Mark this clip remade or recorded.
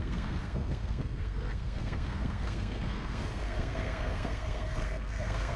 remade